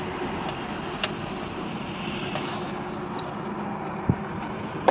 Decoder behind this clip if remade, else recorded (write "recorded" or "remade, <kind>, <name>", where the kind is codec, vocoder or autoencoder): recorded